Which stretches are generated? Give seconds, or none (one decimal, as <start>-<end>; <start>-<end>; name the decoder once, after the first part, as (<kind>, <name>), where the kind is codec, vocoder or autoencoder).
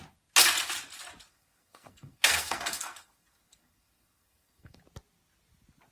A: 1.3-4.8 (codec, SNAC)